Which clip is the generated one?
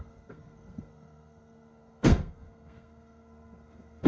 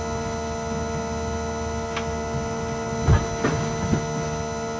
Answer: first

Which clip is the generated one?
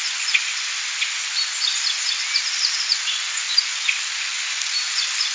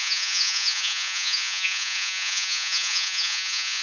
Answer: second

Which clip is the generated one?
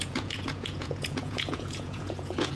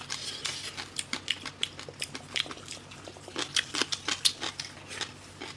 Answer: first